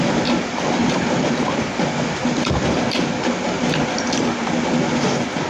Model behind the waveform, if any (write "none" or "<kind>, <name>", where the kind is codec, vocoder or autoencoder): none